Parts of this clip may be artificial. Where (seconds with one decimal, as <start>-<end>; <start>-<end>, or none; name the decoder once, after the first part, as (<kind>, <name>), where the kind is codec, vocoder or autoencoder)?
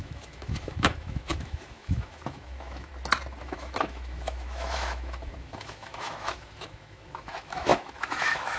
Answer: 0.0-2.9 (autoencoder, DAC-VAE); 3.4-8.6